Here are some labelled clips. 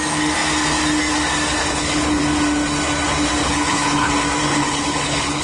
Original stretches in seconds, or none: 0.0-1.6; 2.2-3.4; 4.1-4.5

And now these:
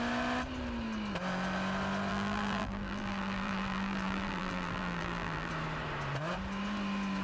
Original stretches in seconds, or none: 0.0-2.1; 5.5-7.2

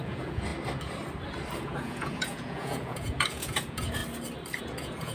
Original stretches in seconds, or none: 0.5-1.6; 4.0-4.6

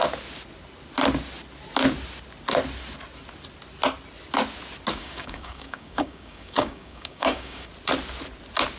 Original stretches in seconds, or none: 0.0-4.9; 7.7-8.8

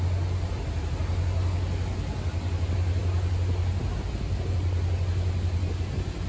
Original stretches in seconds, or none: 0.0-6.3

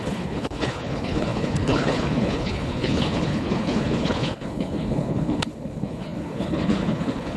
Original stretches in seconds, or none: none